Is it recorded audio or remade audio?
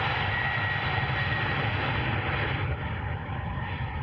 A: recorded